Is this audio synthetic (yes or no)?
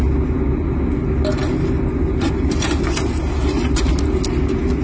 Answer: no